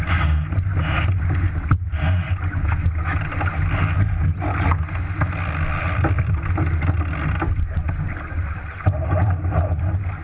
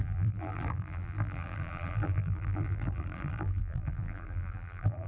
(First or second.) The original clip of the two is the first